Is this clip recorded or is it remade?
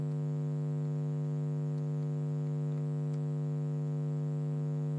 recorded